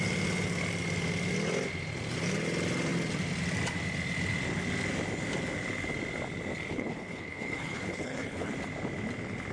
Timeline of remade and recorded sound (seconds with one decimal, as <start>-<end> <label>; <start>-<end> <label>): 0.0-6.7 recorded; 6.7-8.5 remade; 8.5-9.5 recorded